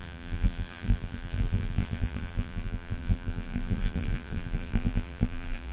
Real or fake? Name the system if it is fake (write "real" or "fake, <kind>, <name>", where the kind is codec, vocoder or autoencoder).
fake, vocoder, BigVGAN v2